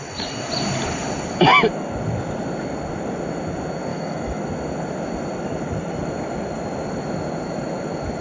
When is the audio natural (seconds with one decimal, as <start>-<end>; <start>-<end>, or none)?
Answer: 0.0-3.9; 4.4-8.2